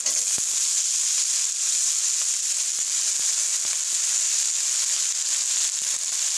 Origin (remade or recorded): recorded